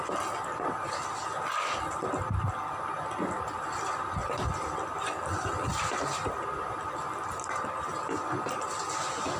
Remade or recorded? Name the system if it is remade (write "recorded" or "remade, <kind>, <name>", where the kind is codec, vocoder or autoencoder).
recorded